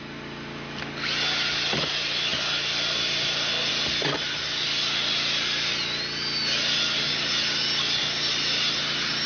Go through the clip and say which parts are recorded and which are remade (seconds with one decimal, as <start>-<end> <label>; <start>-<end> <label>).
0.0-9.3 recorded